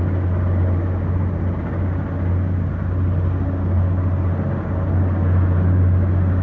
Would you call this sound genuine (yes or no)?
yes